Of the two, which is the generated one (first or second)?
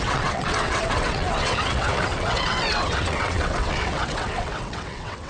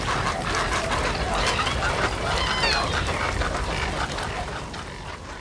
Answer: first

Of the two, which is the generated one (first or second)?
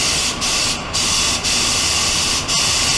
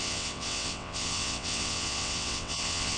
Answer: second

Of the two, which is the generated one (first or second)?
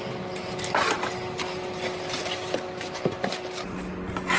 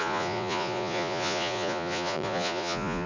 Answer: second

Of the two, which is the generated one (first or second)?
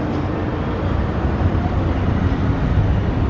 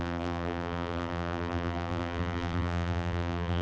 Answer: second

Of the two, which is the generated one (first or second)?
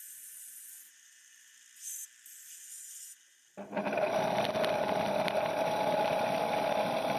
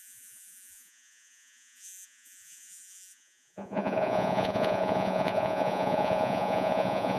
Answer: second